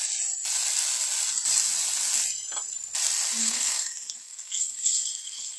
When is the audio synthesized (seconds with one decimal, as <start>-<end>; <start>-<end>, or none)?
3.4-5.6